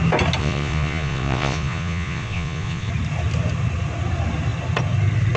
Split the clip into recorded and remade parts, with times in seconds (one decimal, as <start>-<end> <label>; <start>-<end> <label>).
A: 0.0-0.4 recorded; 0.4-2.9 remade; 2.9-5.4 recorded